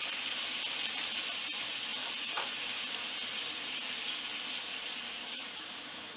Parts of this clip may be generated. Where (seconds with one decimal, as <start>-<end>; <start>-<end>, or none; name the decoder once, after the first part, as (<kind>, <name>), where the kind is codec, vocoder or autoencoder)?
5.1-6.2 (autoencoder, DAC-VAE)